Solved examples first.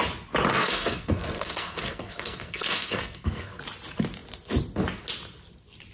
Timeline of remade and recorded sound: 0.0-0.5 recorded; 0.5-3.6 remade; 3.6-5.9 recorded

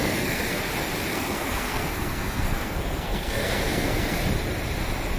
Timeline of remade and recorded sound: 0.0-0.6 remade; 0.6-1.1 recorded; 1.1-4.2 remade; 4.2-5.2 recorded